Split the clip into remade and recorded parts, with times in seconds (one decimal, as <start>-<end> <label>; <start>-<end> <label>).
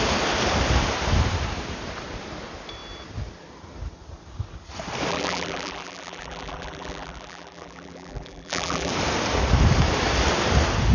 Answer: 0.0-5.1 recorded; 5.1-8.9 remade; 8.9-10.9 recorded